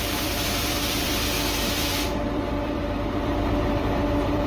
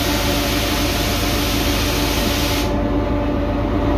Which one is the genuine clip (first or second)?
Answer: second